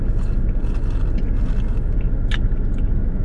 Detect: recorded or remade recorded